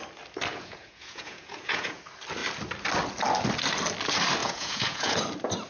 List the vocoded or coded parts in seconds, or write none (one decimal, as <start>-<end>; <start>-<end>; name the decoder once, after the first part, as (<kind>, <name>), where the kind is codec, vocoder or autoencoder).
0.5-2.0 (vocoder, Vocos); 4.4-5.2